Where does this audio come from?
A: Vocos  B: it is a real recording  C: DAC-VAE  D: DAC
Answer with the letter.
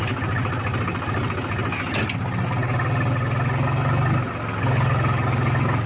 B